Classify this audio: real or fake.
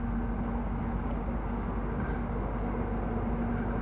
real